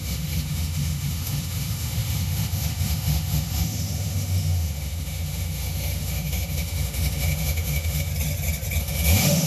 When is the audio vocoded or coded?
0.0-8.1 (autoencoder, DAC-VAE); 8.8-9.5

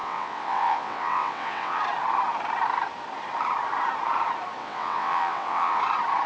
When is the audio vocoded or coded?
0.0-1.8 (vocoder, WaveNeXt); 4.6-5.8

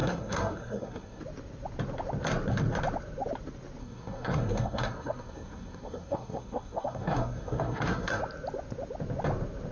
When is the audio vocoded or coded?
0.0-1.2 (codec, SNAC); 3.8-8.2

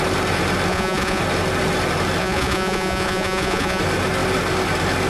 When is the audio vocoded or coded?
0.7-1.2 (vocoder, Vocos); 2.2-3.8

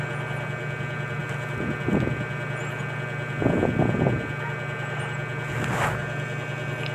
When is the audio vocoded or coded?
none

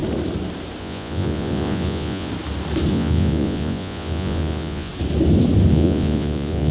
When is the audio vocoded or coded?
0.8-2.3 (vocoder, Vocos); 2.9-4.9; 5.7-6.7